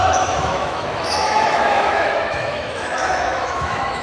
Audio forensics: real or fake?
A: fake